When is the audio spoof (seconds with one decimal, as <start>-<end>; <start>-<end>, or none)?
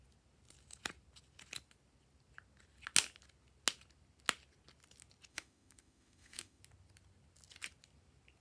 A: 5.3-6.6